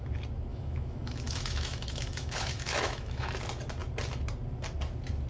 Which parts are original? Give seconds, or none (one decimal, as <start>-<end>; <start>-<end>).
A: 0.0-0.5; 3.3-5.3